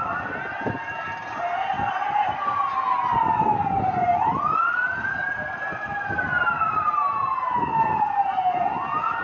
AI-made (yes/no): no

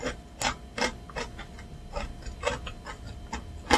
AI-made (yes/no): no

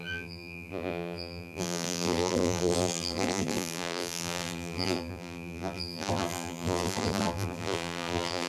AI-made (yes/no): yes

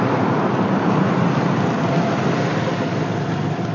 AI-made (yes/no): no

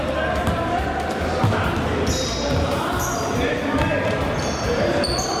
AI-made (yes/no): no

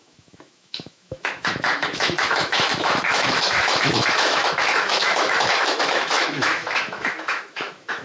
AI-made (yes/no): yes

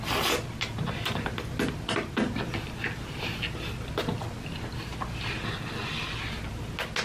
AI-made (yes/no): no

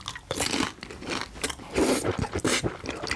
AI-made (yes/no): no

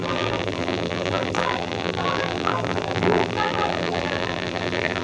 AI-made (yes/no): yes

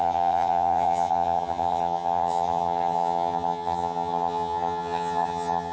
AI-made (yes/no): yes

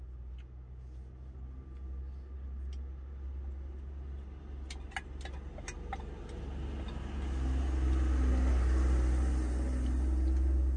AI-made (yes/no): no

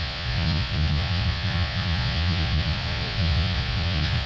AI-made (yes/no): yes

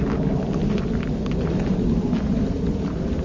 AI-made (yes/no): no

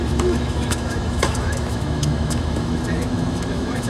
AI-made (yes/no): yes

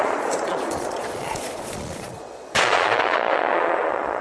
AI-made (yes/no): yes